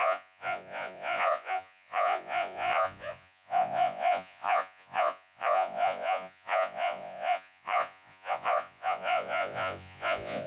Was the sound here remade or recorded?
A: remade